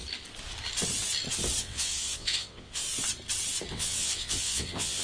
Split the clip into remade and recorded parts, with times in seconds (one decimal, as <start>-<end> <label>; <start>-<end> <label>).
0.0-1.6 recorded; 1.6-2.8 remade; 2.8-3.7 recorded; 3.7-5.0 remade